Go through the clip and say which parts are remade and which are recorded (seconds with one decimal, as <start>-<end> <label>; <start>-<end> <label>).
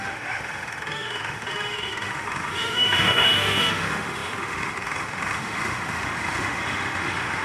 0.0-7.4 remade